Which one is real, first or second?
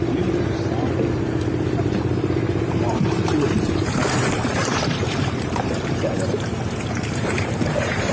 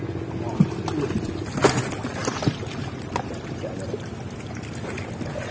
second